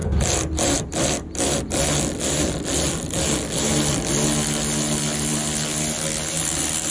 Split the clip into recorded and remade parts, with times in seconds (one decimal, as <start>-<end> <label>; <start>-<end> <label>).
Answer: 0.0-6.9 recorded